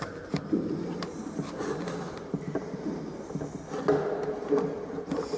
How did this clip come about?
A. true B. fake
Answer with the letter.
A